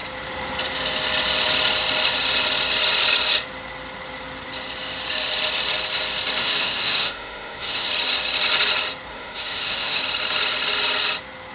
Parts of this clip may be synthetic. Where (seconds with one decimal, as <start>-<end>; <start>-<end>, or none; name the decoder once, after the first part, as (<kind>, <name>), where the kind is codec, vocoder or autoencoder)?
6.4-7.9 (autoencoder, DAC-VAE); 9.1-10.0